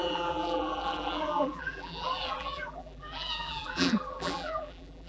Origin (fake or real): fake